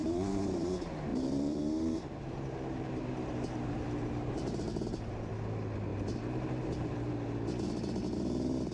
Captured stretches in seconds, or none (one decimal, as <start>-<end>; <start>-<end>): 0.7-1.1; 5.4-5.9; 7.1-8.7